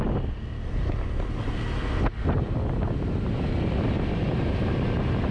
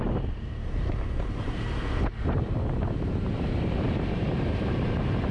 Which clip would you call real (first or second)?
first